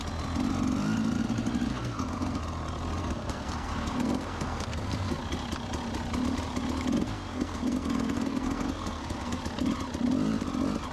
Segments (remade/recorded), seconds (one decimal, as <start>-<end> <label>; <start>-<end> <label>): 0.0-1.7 recorded; 1.7-2.4 remade; 2.4-3.0 recorded; 3.0-5.2 remade; 5.2-7.0 recorded; 7.0-9.4 remade; 9.4-10.9 recorded